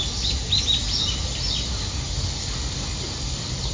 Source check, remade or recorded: recorded